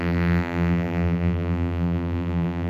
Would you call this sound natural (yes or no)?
no